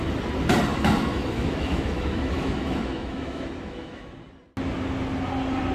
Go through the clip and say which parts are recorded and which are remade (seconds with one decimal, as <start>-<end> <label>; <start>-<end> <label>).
0.0-0.7 recorded; 0.7-4.1 remade; 4.1-5.7 recorded